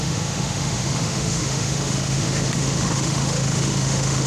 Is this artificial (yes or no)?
yes